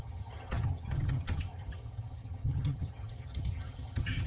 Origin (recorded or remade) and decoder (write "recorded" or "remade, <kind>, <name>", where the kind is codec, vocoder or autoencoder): remade, vocoder, HiFi-GAN